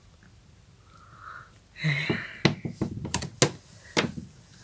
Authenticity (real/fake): real